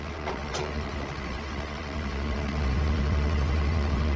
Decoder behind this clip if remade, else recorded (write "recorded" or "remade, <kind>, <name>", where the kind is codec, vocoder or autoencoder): remade, vocoder, WaveNeXt